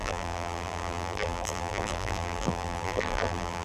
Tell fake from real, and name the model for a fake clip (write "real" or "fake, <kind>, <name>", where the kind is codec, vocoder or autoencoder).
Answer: fake, vocoder, BigVGAN v2